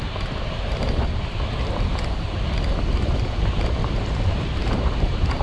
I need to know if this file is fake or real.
fake